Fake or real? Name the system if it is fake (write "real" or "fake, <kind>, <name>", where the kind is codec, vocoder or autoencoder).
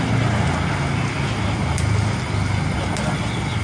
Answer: real